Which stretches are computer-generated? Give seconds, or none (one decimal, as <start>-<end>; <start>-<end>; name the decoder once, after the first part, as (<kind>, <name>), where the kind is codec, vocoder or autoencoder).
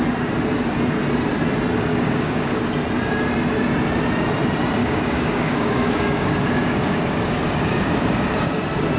1.9-2.7 (codec, DAC); 4.8-8.6